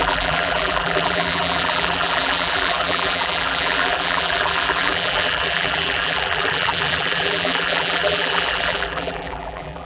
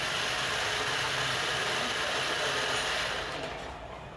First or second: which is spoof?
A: first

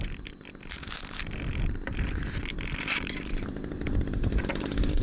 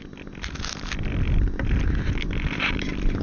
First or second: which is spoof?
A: first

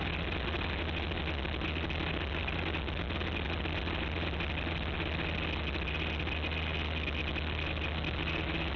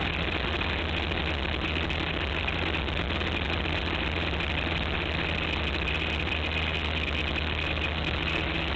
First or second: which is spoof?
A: second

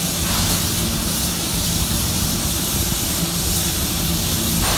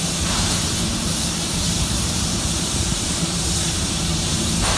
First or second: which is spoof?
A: second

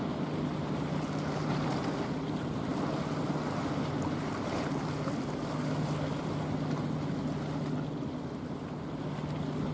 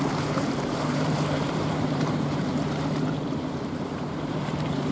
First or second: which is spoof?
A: second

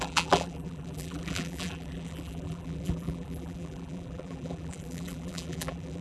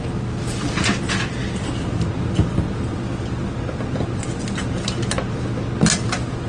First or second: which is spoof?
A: first